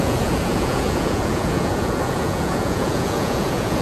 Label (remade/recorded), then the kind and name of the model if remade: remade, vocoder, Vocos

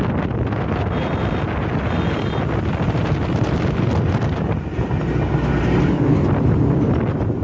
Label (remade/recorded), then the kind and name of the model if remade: recorded